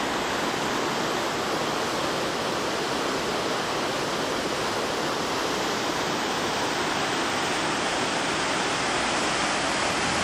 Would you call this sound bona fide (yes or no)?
yes